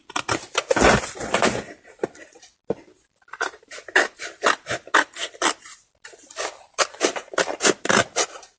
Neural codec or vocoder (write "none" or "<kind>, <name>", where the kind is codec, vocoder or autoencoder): none